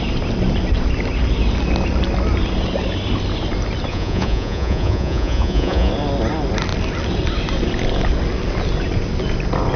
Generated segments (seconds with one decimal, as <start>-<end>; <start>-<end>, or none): 3.9-5.9